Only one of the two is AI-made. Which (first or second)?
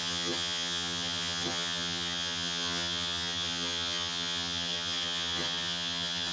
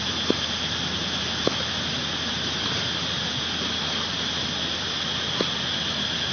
first